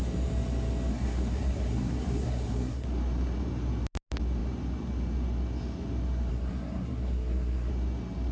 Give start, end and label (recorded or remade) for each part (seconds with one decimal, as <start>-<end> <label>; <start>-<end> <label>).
0.0-0.9 recorded; 0.9-2.8 remade; 2.8-6.3 recorded; 6.3-7.7 remade; 7.7-8.3 recorded

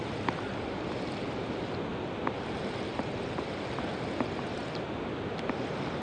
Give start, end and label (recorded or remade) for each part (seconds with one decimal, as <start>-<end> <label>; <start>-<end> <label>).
0.0-6.0 recorded

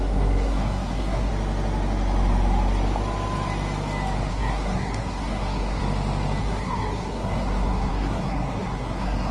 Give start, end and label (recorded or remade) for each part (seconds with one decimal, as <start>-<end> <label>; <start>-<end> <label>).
0.0-1.3 remade; 1.3-4.3 recorded; 4.3-5.8 remade; 5.8-6.4 recorded; 6.4-9.3 remade

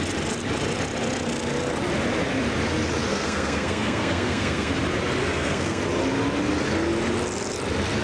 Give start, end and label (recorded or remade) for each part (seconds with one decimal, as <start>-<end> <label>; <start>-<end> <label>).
0.0-3.1 recorded; 3.1-4.7 remade; 4.7-5.2 recorded; 5.2-5.8 remade; 5.8-8.0 recorded